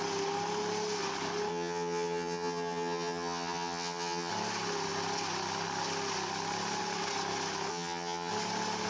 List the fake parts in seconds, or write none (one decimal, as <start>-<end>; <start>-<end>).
1.5-4.3; 7.7-8.3